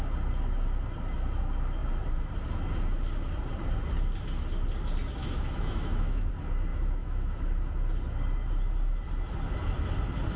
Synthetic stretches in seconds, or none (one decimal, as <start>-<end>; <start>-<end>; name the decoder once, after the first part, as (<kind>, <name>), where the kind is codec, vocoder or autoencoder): 5.2-6.3 (autoencoder, DAC-VAE); 6.7-7.4